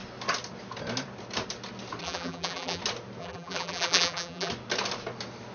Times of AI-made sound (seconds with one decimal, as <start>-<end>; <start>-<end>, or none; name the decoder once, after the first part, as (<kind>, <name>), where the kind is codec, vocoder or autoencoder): 2.0-2.8 (vocoder, BigVGAN v2); 3.2-4.5